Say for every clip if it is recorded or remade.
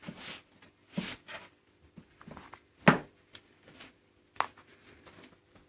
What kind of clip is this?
recorded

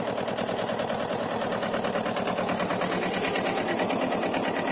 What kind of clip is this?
recorded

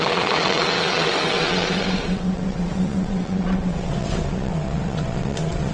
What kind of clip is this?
remade